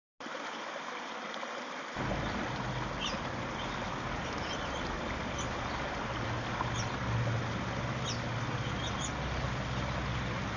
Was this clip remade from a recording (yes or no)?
no